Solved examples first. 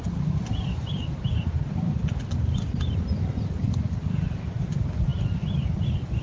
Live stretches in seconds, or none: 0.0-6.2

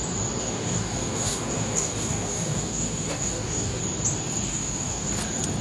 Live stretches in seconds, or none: 0.0-0.4; 3.8-4.5; 5.1-5.6

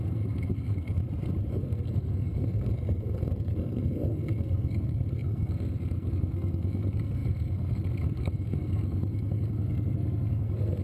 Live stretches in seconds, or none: 1.0-1.5

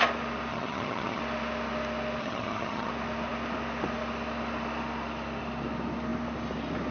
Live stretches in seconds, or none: 0.0-0.5; 1.2-2.2; 2.9-6.9

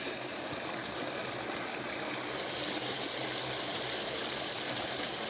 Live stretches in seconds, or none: 0.0-5.3

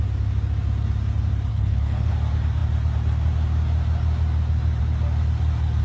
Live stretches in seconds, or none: 0.0-1.5; 2.1-5.8

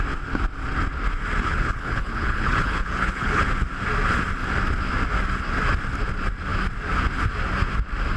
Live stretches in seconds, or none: 0.0-1.4; 3.4-8.2

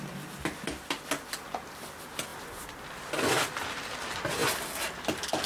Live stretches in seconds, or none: 0.0-2.3; 2.8-5.5